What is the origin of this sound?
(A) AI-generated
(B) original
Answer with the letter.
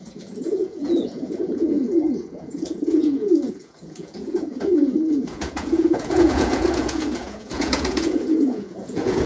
A